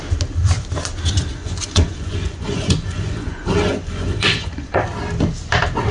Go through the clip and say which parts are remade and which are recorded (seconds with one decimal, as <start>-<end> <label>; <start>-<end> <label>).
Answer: 0.0-1.3 recorded; 1.3-4.8 remade; 4.8-5.9 recorded